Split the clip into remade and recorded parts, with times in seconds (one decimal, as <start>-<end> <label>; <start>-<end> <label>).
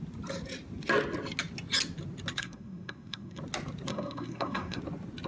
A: 0.0-2.4 recorded; 2.4-3.4 remade; 3.4-3.9 recorded; 3.9-4.8 remade; 4.8-5.3 recorded